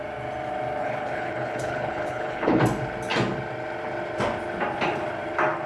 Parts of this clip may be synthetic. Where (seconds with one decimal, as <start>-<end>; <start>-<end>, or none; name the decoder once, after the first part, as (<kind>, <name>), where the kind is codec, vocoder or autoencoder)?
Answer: 0.8-2.6 (codec, HILCodec)